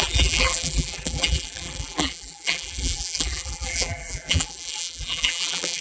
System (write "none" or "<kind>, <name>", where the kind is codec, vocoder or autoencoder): vocoder, BigVGAN v2